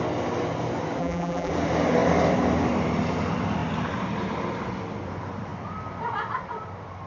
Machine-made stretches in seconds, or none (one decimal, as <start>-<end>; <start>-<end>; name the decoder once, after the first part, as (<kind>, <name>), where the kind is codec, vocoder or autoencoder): 1.0-1.5 (vocoder, BigVGAN v2)